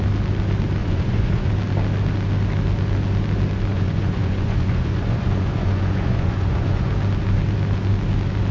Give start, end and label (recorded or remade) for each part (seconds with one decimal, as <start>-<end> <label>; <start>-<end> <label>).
0.0-0.8 recorded; 0.8-1.5 remade; 1.5-3.7 recorded; 3.7-6.9 remade; 6.9-8.5 recorded